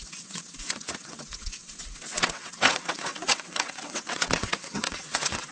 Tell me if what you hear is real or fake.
fake